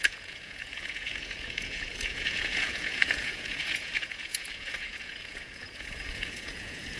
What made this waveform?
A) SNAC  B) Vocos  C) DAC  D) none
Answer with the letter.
B